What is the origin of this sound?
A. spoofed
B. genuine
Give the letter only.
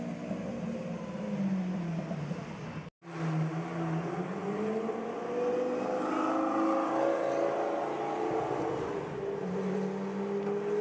B